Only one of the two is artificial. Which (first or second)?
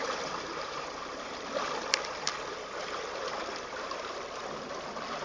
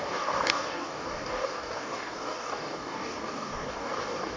second